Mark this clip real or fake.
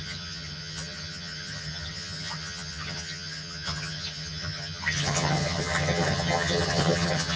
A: fake